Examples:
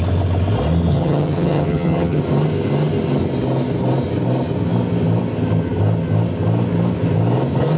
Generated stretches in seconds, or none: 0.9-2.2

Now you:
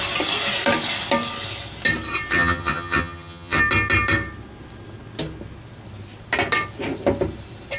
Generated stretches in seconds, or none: 2.3-3.6

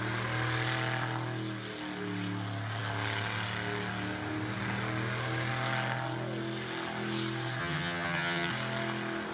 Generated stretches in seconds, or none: 7.6-8.5

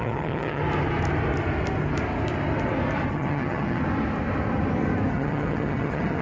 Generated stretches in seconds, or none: 0.0-0.6; 3.1-3.8; 5.1-6.2

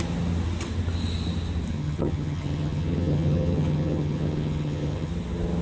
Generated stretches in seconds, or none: 1.7-5.1